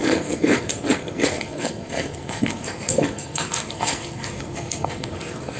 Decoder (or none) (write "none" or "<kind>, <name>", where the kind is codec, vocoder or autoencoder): codec, SNAC